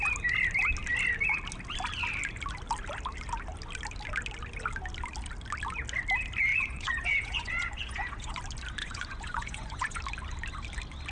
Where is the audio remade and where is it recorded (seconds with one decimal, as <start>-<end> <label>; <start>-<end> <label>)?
0.0-6.5 recorded; 6.5-8.4 remade; 8.4-8.8 recorded; 8.8-10.0 remade; 10.0-11.1 recorded

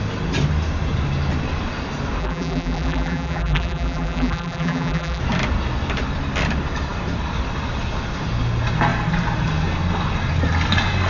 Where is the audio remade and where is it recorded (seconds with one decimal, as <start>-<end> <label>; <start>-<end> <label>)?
0.0-2.2 recorded; 2.2-5.2 remade; 5.2-11.1 recorded

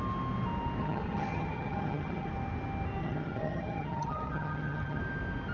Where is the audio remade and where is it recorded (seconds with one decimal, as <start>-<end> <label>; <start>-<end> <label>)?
0.0-0.8 recorded; 0.8-2.3 remade; 2.3-3.0 recorded; 3.0-5.0 remade; 5.0-5.5 recorded